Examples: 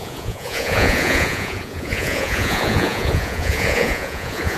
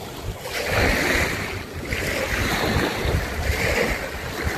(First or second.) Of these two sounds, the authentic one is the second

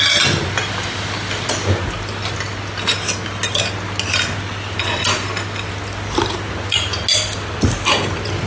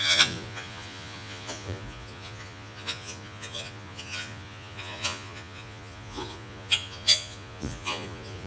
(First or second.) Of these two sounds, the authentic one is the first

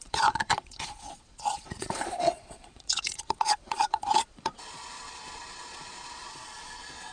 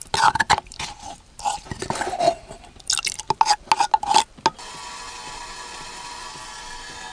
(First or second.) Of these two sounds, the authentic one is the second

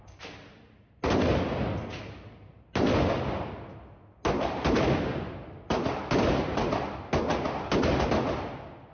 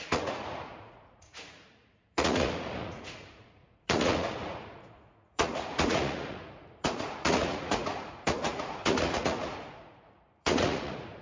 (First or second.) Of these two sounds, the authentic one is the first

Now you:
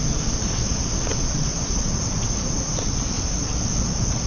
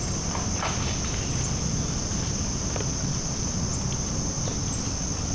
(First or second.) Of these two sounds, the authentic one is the second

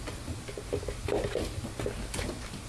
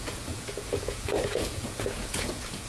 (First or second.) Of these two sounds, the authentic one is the first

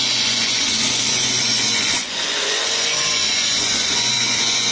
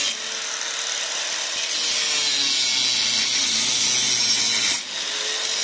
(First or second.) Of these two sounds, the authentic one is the second